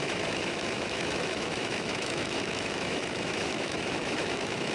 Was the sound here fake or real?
fake